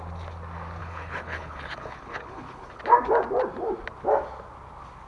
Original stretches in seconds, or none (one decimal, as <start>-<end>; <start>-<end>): 0.0-0.8; 2.8-5.1